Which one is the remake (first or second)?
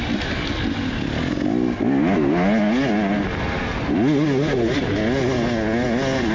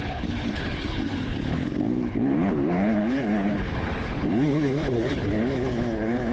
second